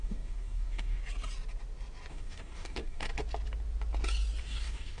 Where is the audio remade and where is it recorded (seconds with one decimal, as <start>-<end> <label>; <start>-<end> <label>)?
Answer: 0.0-1.0 remade; 1.0-2.1 recorded; 2.1-3.1 remade; 3.1-4.4 recorded; 4.4-5.0 remade